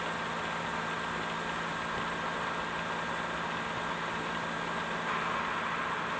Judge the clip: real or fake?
real